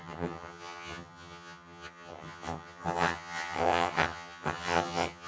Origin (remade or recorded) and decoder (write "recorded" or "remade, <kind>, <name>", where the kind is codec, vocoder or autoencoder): remade, vocoder, HiFi-GAN